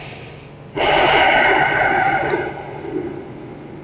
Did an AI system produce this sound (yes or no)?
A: no